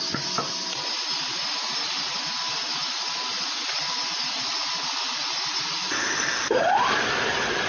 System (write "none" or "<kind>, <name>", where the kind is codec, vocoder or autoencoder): none